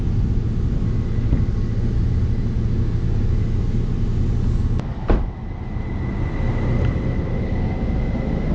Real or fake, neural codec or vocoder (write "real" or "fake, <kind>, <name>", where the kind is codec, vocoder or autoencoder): real